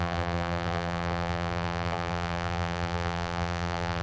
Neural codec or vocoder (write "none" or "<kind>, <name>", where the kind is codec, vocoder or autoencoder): vocoder, BigVGAN v2